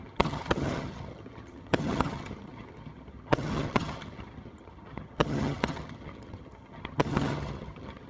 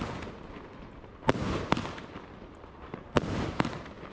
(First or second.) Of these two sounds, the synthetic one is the first